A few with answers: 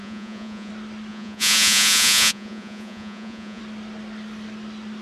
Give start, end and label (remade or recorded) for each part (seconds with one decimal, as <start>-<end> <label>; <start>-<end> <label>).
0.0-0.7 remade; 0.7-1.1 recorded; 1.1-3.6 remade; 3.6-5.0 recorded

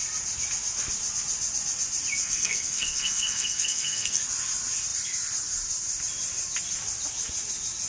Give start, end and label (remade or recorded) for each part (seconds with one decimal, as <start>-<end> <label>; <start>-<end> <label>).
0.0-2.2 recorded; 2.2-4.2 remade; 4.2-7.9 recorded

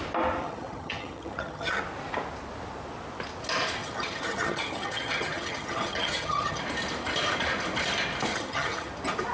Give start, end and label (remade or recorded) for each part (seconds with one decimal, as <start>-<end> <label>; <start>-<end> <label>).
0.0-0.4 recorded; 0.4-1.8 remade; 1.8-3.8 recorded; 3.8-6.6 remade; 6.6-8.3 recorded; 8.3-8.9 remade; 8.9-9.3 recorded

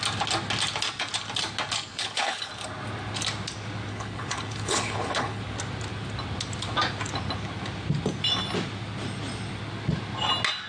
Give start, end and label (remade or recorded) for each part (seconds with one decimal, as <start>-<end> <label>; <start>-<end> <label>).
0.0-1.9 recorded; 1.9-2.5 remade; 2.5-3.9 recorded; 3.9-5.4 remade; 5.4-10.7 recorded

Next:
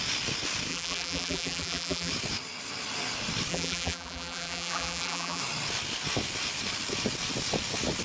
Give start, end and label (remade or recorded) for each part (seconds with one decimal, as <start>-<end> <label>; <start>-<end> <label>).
0.0-0.7 recorded; 0.7-2.1 remade; 2.1-3.5 recorded; 3.5-5.4 remade; 5.4-8.0 recorded

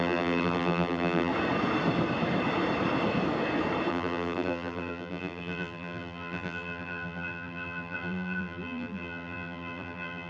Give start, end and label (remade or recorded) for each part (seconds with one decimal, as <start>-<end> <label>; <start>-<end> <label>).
0.0-1.3 remade; 1.3-3.9 recorded; 3.9-10.3 remade